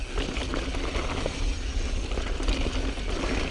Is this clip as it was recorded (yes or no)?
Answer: yes